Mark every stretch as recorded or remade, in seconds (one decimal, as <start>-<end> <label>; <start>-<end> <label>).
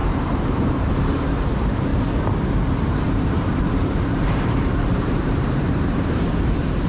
0.0-1.9 remade; 1.9-2.7 recorded; 2.7-6.9 remade